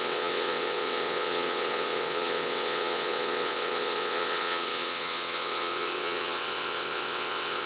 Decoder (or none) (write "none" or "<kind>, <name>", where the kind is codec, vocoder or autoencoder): vocoder, WaveNeXt